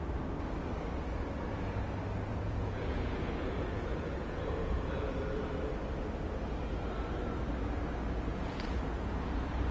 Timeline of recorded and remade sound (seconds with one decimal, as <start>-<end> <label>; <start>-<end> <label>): 0.0-2.3 recorded; 2.3-5.2 remade; 5.2-8.3 recorded; 8.3-8.9 remade; 8.9-9.7 recorded